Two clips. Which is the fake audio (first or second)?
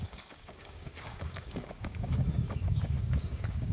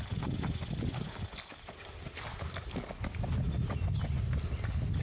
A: first